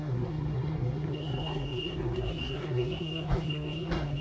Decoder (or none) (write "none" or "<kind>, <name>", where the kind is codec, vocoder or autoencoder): codec, SNAC